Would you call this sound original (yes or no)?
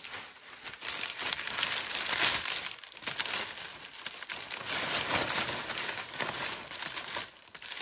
yes